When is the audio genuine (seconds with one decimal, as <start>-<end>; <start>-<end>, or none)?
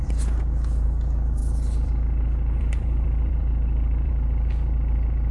0.0-1.4; 4.1-5.3